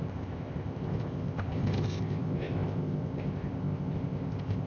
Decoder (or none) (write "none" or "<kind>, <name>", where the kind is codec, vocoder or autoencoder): codec, ZipCodec